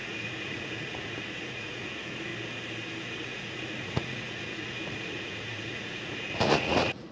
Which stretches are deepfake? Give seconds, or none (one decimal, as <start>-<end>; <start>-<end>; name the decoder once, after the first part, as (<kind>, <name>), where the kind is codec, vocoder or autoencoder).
0.0-2.3 (vocoder, Vocos); 3.2-7.1